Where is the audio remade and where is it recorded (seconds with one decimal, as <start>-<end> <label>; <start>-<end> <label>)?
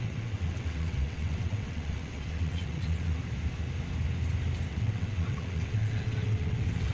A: 0.0-3.2 remade; 3.2-4.7 recorded; 4.7-6.9 remade